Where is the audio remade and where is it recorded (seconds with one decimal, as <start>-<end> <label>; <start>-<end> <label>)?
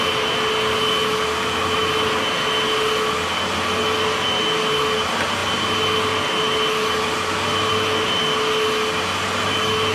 0.0-9.9 recorded